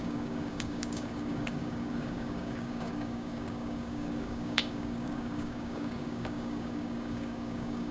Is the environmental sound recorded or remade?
remade